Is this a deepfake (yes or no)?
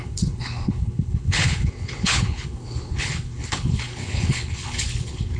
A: yes